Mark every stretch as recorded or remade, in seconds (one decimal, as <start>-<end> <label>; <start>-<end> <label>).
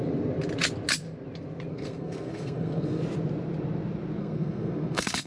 0.0-1.7 recorded; 1.7-3.0 remade; 3.0-4.2 recorded; 4.2-5.3 remade